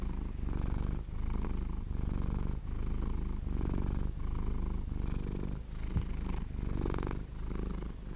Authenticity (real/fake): real